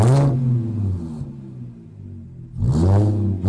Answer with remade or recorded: recorded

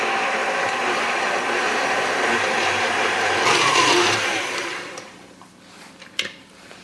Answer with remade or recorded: remade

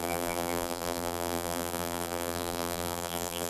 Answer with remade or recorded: remade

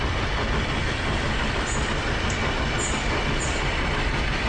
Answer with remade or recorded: recorded